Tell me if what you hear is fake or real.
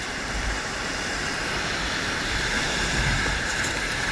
fake